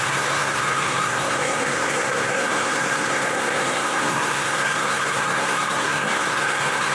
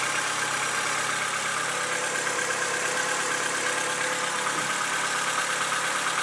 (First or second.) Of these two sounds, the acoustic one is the second